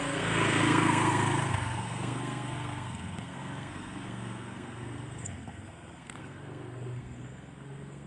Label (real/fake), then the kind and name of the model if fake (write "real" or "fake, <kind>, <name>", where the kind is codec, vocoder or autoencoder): fake, codec, SNAC